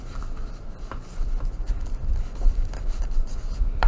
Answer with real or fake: fake